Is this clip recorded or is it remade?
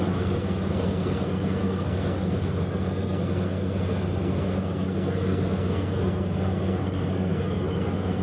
remade